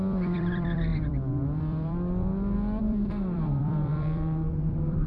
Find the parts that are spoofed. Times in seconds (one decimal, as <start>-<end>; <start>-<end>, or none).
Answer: 0.0-5.1